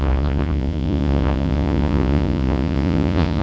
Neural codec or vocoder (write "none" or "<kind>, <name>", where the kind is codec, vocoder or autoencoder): vocoder, Vocos